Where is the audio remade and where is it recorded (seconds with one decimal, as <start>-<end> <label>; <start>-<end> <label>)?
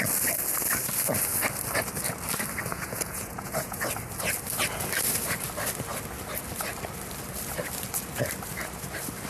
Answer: 0.0-2.7 recorded; 2.7-3.8 remade; 3.8-9.3 recorded